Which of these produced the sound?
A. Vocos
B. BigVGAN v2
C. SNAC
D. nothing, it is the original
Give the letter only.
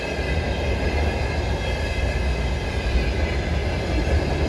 D